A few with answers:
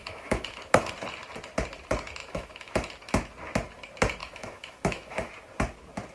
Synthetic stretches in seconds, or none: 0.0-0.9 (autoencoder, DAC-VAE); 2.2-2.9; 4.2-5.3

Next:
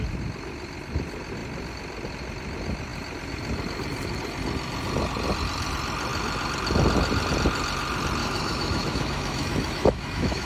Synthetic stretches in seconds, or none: 8.2-10.5 (autoencoder, DAC-VAE)

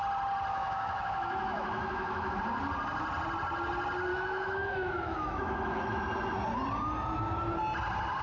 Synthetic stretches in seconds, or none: 0.5-2.4 (autoencoder, DAC-VAE); 4.1-6.0

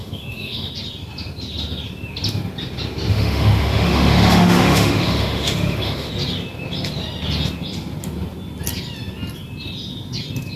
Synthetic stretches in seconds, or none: 0.0-0.7 (autoencoder, DAC-VAE); 3.1-6.1

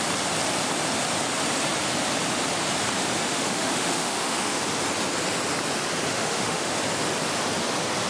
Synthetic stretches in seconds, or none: 3.3-4.6 (autoencoder, DAC-VAE); 6.1-6.7

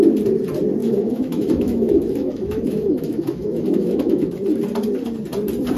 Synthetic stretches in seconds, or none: 0.8-4.3 (autoencoder, DAC-VAE)

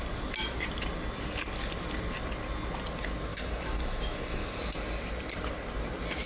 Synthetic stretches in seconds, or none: 3.3-4.5 (autoencoder, DAC-VAE)